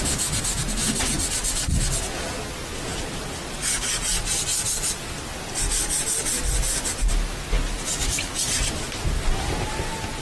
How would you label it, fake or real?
real